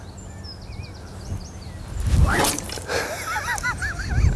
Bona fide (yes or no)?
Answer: yes